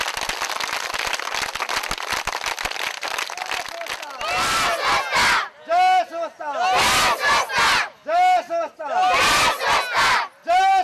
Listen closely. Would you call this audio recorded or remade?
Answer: recorded